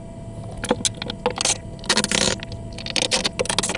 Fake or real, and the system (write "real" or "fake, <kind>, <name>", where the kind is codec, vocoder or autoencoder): real